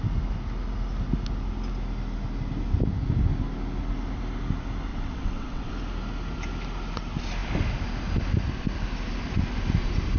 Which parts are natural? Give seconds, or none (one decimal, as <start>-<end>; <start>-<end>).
0.0-4.9; 5.7-10.2